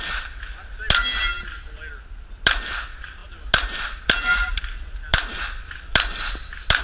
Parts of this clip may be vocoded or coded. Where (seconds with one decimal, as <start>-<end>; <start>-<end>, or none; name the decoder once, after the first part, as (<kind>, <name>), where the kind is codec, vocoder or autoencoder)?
none